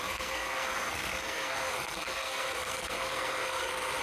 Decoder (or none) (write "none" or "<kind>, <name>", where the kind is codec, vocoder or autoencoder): codec, SNAC